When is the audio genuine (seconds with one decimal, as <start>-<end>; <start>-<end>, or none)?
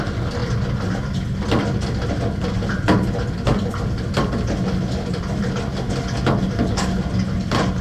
0.0-7.8